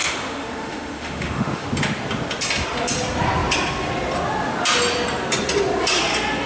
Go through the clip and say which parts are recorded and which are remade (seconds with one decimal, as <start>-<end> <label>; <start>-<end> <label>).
0.0-1.7 remade; 1.7-6.5 recorded